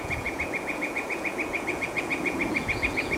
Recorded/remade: remade